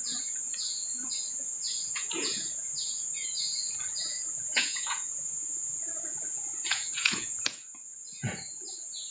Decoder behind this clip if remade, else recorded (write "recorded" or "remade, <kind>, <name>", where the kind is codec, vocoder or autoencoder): remade, vocoder, Vocos